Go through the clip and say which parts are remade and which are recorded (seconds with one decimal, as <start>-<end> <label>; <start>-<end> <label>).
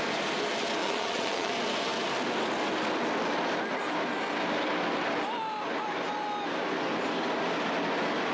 0.0-0.8 recorded; 0.8-1.5 remade; 1.5-8.3 recorded